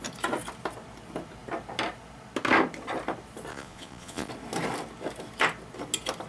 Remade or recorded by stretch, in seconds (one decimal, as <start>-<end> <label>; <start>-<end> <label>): 0.0-3.5 recorded; 3.5-4.3 remade; 4.3-6.3 recorded